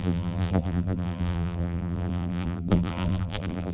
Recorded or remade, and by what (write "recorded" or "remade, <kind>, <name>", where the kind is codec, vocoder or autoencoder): remade, vocoder, BigVGAN v2